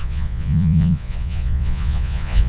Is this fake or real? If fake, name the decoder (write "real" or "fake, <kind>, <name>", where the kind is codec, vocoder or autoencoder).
fake, vocoder, Vocos